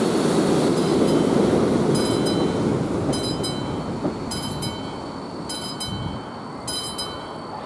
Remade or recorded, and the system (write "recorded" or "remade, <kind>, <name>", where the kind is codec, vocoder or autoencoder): recorded